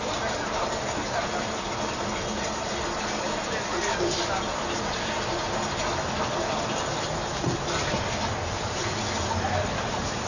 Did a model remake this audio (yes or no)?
no